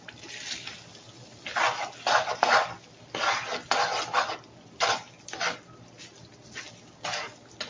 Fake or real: real